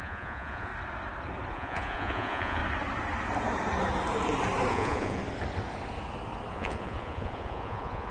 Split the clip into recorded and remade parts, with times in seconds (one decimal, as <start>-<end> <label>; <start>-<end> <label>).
0.0-0.7 remade; 0.7-1.5 recorded; 1.5-2.6 remade; 2.6-4.7 recorded; 4.7-5.2 remade; 5.2-6.5 recorded; 6.5-8.1 remade